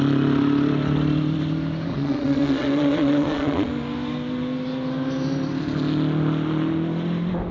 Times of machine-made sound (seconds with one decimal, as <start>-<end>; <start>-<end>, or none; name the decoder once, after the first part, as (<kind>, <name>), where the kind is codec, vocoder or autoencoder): 1.9-3.7 (vocoder, Vocos)